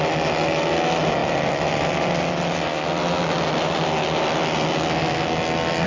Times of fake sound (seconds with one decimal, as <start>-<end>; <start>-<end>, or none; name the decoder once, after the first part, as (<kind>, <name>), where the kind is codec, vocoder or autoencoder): none